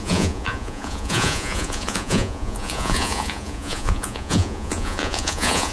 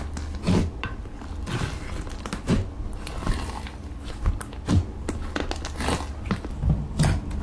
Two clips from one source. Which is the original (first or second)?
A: second